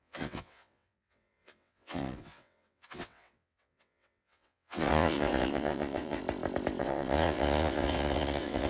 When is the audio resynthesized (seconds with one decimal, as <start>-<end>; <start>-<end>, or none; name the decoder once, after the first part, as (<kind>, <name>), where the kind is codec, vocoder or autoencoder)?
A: 0.0-6.2 (vocoder, WaveNeXt); 6.8-8.7